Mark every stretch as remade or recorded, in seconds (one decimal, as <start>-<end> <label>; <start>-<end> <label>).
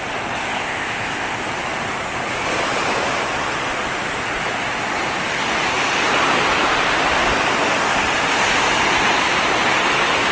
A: 0.0-0.5 recorded; 0.5-1.4 remade; 1.4-10.3 recorded